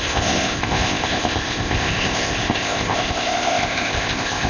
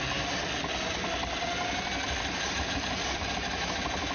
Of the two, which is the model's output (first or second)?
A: first